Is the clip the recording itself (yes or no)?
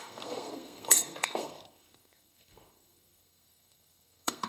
no